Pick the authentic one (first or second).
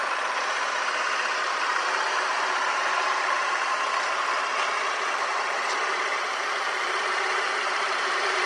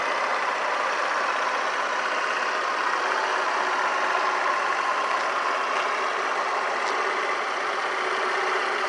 second